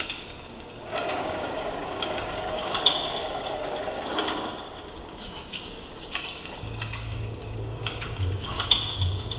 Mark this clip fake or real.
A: fake